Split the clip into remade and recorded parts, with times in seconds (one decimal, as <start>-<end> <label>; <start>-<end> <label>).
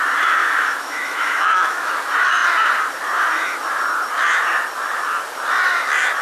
0.0-0.4 recorded; 0.4-1.9 remade; 1.9-6.2 recorded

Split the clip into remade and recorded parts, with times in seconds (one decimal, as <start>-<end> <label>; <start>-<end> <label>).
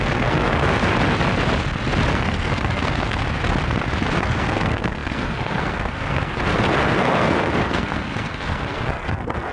0.0-0.9 remade; 0.9-2.1 recorded; 2.1-3.2 remade; 3.2-4.2 recorded; 4.2-9.5 remade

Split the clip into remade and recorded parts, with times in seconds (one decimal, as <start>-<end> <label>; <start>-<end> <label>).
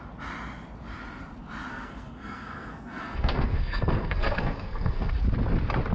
0.0-1.7 recorded; 1.7-5.1 remade; 5.1-5.9 recorded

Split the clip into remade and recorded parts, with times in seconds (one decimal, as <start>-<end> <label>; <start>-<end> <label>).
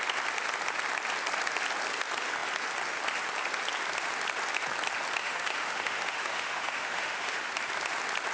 0.0-5.2 recorded; 5.2-7.5 remade; 7.5-8.3 recorded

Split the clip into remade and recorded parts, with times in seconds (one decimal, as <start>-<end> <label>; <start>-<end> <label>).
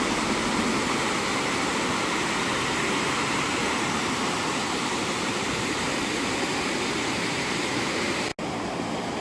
0.0-1.7 remade; 1.7-2.8 recorded; 2.8-8.3 remade; 8.3-9.2 recorded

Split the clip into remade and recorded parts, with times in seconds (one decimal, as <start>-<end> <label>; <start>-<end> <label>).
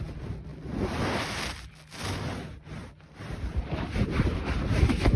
0.0-5.2 recorded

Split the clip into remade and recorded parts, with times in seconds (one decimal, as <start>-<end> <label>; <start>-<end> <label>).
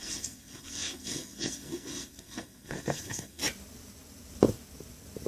0.0-3.4 remade; 3.4-5.3 recorded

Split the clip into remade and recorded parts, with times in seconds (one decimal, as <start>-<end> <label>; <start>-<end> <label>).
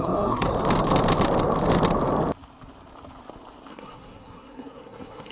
0.0-0.5 remade; 0.5-3.7 recorded; 3.7-5.3 remade